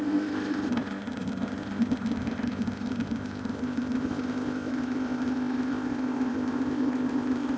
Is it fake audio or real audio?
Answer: fake